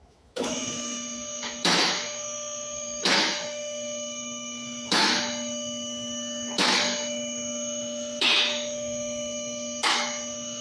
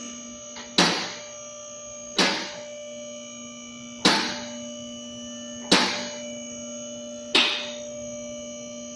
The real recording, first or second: second